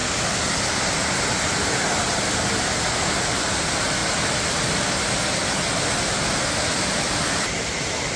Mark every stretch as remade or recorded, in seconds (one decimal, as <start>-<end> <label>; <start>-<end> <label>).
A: 0.0-8.2 recorded